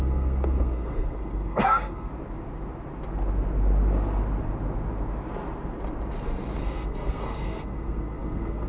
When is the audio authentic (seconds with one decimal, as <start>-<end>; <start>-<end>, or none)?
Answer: 2.1-6.6